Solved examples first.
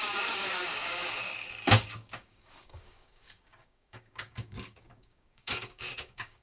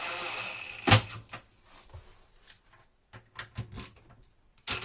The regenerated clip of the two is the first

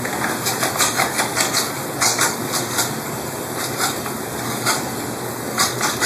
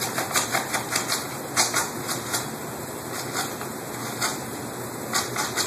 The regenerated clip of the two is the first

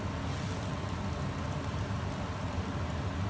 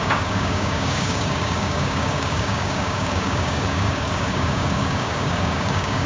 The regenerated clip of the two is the second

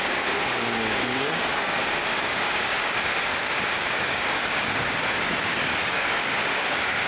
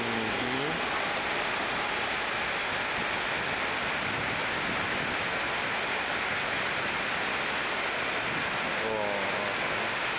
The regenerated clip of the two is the first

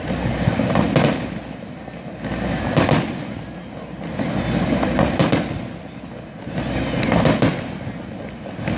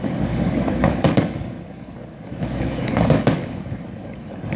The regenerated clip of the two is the second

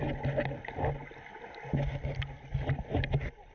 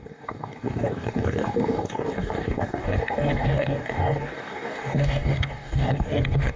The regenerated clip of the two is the second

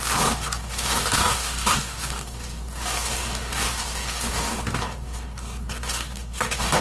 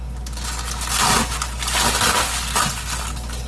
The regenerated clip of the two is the first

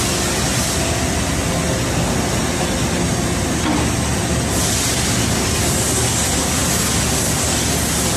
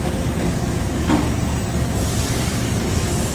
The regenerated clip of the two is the second